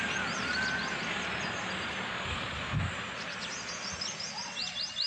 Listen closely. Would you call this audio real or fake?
real